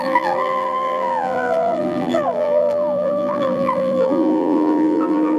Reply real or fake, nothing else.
fake